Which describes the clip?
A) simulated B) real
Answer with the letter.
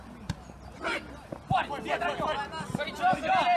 B